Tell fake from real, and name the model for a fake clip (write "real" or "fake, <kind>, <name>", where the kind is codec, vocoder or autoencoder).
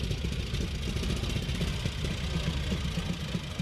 real